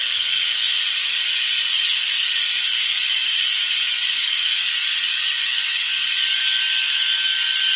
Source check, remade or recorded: remade